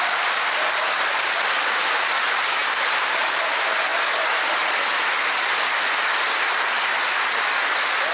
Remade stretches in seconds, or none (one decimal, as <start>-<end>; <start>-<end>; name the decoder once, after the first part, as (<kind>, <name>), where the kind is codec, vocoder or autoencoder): none